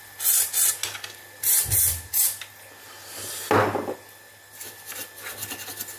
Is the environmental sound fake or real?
real